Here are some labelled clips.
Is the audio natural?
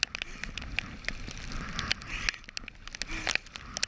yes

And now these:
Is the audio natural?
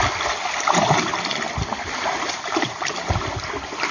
yes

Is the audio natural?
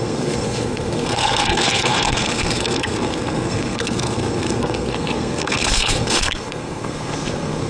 no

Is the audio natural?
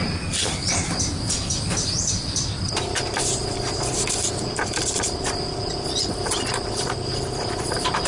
no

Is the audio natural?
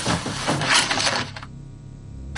no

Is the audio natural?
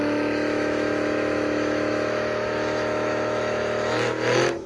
no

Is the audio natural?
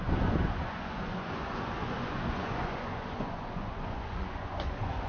no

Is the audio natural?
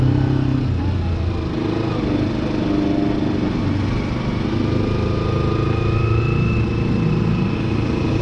yes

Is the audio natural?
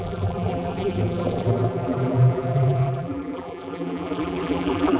no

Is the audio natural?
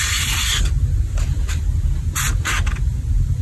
yes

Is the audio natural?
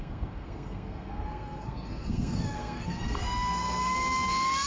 no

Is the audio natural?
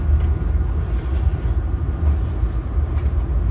yes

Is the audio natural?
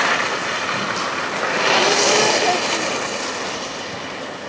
yes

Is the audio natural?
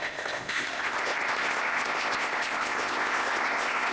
no